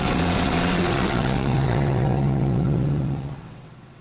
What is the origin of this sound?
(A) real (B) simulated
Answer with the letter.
B